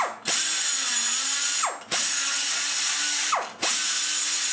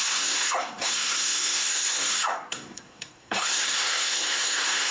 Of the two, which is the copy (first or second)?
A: second